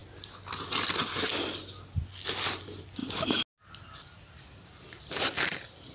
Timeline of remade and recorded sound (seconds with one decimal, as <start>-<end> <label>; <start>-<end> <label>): 0.0-5.9 recorded